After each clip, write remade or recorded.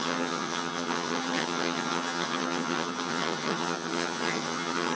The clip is remade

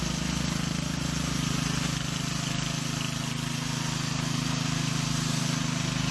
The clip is recorded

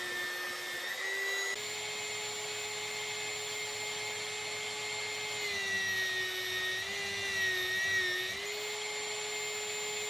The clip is recorded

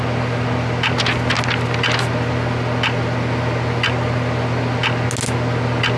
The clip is recorded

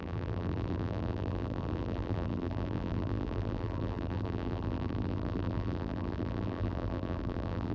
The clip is remade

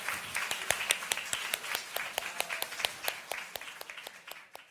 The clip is recorded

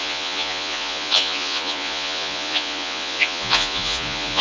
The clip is remade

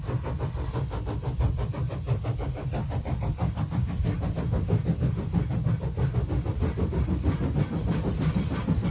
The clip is recorded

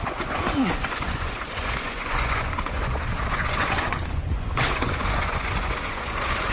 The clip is remade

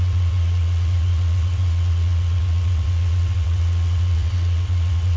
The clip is remade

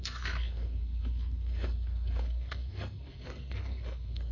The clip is remade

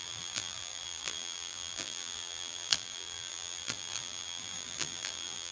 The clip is remade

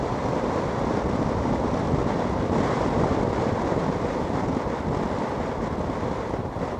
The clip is remade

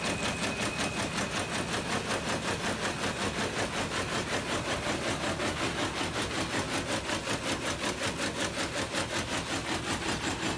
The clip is recorded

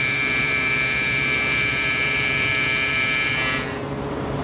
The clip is remade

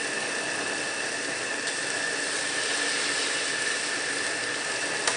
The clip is recorded